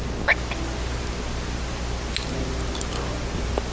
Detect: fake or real real